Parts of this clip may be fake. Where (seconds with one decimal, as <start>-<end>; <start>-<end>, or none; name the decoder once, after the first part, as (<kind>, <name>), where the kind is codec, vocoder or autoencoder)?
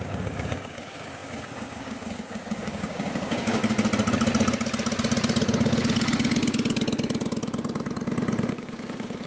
0.0-3.6 (codec, DAC); 8.5-9.3